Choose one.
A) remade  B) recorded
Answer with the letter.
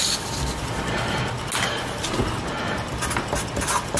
B